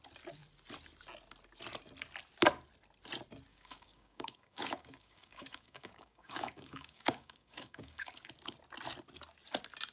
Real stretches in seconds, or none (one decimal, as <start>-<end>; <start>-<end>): 0.0-3.5; 8.3-9.9